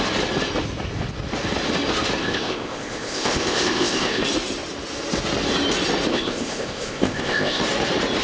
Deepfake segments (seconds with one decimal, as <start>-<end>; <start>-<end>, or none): 2.2-4.2; 6.1-7.6